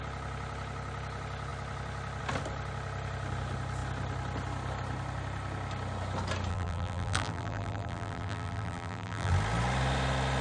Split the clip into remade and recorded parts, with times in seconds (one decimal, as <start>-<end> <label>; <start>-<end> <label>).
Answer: 0.0-6.5 recorded; 6.5-9.3 remade; 9.3-10.4 recorded